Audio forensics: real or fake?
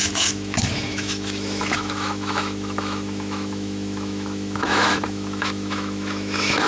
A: fake